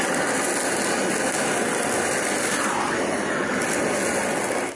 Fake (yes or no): no